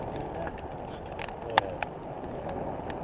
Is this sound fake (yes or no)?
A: no